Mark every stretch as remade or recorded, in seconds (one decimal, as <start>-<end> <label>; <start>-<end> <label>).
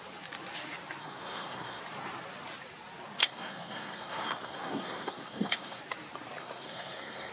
0.0-1.0 recorded; 1.0-1.8 remade; 1.8-3.2 recorded; 3.2-5.8 remade; 5.8-6.4 recorded; 6.4-7.3 remade